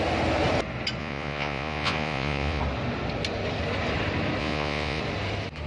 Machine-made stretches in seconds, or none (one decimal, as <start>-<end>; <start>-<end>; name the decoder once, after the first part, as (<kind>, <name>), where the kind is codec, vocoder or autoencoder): 1.0-2.6 (vocoder, Vocos); 4.4-5.0